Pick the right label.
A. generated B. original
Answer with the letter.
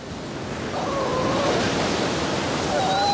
B